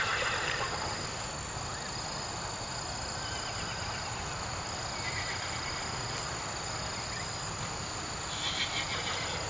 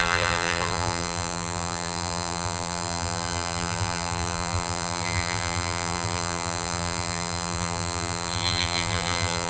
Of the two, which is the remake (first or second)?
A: second